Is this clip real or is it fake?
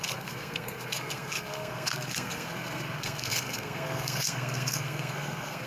fake